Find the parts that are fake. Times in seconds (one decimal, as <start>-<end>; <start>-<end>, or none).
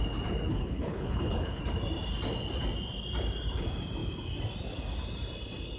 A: 0.5-1.6